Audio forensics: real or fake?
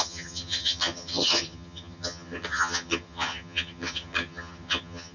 fake